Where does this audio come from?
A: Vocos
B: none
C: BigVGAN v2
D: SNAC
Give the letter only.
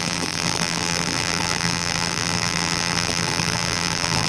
C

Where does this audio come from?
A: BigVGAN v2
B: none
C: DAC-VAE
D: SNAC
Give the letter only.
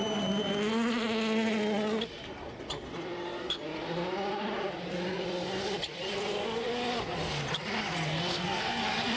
B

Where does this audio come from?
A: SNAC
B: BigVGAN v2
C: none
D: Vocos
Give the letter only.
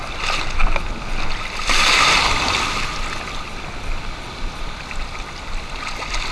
C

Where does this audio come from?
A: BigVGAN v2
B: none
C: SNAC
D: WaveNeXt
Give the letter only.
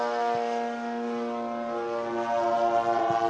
B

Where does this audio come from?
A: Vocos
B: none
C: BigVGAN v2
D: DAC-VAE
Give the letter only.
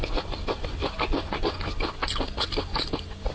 B